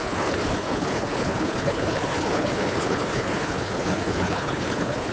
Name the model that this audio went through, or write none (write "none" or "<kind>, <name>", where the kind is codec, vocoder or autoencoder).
codec, HILCodec